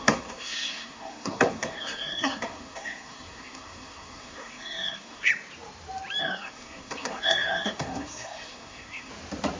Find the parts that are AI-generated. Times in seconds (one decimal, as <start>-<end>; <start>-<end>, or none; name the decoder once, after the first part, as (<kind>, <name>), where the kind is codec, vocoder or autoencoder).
0.0-5.3 (codec, SNAC); 6.2-9.1